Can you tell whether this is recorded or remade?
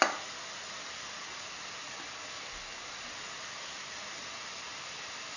recorded